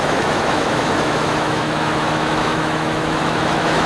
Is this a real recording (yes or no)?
no